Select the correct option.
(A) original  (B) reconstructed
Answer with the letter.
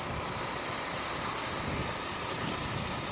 A